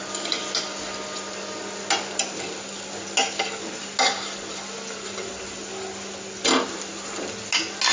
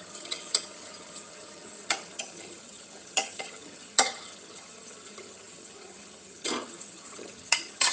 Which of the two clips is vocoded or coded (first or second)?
second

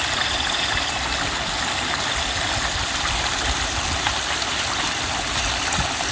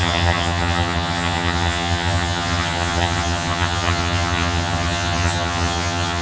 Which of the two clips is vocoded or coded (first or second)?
second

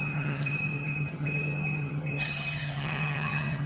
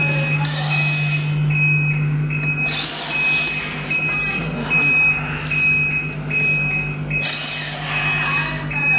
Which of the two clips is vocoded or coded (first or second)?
first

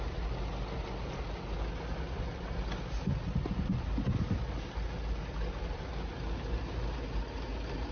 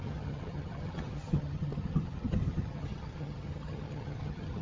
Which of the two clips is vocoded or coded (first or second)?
second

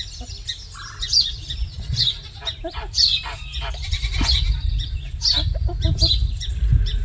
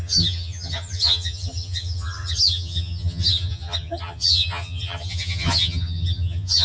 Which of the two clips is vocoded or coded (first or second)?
second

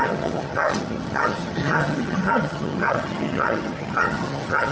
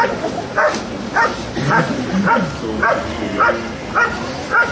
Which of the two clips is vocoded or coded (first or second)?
first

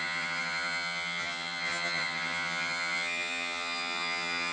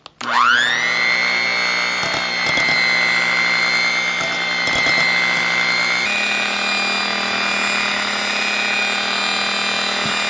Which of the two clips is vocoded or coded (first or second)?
first